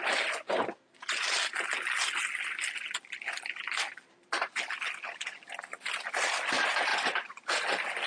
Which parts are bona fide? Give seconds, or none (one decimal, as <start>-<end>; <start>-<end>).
0.0-8.1